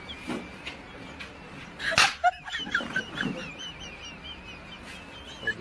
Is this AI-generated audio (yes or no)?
no